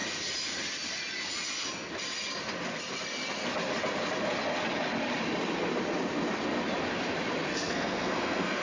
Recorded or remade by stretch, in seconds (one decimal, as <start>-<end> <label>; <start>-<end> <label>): 0.0-7.5 recorded; 7.5-8.6 remade